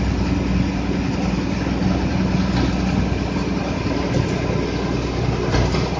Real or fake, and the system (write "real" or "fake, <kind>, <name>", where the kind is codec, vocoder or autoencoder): real